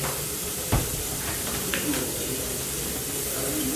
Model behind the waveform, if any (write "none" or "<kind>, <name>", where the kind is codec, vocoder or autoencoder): none